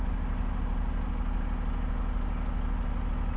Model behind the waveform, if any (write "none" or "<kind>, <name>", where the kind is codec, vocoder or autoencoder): none